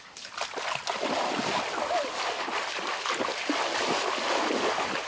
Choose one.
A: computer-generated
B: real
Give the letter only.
B